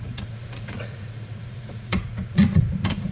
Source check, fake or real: fake